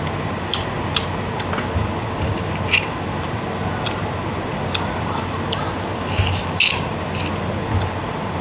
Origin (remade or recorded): recorded